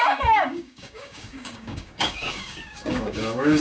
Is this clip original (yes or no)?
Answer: no